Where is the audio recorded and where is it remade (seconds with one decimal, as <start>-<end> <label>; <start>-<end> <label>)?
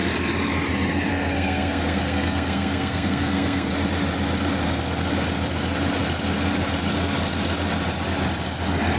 0.0-1.1 recorded; 1.1-3.7 remade; 3.7-9.0 recorded